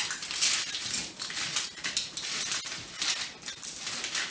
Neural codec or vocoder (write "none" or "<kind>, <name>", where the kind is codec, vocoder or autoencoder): none